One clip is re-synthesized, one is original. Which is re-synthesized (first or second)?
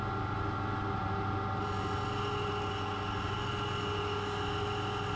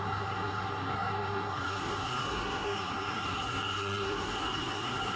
second